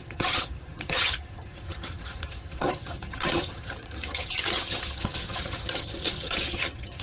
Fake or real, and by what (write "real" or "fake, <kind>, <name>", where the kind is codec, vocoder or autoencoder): fake, vocoder, HiFi-GAN